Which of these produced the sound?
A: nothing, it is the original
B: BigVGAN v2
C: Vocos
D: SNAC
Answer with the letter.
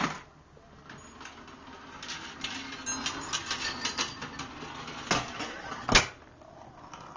A